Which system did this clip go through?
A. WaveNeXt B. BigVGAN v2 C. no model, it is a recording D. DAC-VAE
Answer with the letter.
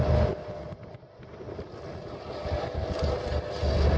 C